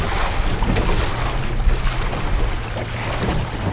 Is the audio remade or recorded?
recorded